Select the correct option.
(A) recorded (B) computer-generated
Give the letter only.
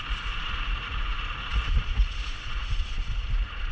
B